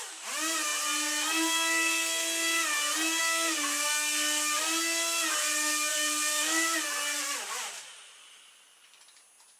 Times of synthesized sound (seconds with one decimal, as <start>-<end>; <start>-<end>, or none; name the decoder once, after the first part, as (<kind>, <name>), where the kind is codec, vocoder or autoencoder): 5.9-9.0 (vocoder, BigVGAN v2)